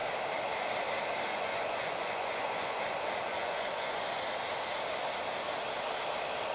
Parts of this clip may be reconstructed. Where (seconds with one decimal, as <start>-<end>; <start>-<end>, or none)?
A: 1.3-2.8; 3.3-4.2